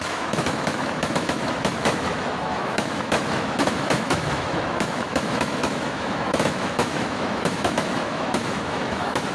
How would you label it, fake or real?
fake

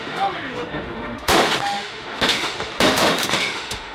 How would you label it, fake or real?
fake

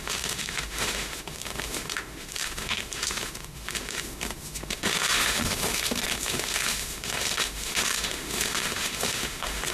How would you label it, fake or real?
fake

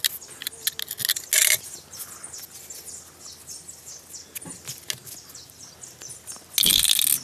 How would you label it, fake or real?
real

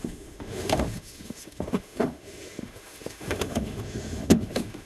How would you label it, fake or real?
fake